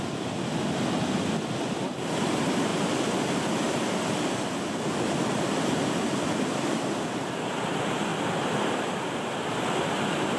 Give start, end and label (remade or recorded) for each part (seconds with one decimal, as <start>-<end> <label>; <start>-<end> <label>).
0.0-10.4 recorded